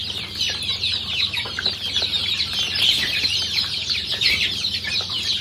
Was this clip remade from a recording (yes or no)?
yes